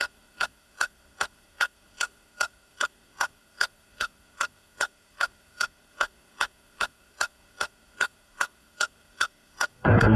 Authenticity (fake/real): fake